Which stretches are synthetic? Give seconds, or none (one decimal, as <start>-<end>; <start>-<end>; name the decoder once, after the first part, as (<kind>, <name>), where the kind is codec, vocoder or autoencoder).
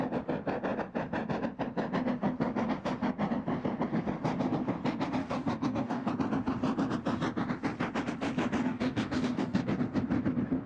5.2-6.1 (codec, DAC); 8.6-9.6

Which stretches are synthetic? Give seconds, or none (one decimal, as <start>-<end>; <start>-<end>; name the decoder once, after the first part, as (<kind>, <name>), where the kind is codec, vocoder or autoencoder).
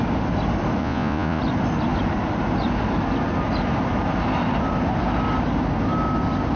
0.8-1.4 (vocoder, Vocos)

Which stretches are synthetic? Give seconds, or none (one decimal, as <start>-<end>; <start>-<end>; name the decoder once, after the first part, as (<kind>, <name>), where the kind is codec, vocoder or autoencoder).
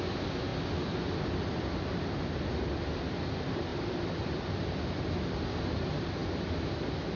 none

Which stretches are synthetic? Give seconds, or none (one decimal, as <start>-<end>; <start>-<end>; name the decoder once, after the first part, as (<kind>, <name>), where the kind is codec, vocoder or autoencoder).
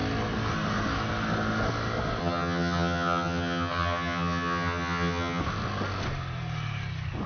2.2-5.4 (vocoder, HiFi-GAN)